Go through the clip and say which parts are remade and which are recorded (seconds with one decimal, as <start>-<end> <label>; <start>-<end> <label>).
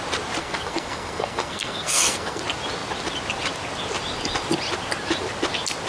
0.0-0.4 recorded; 0.4-2.4 remade; 2.4-5.9 recorded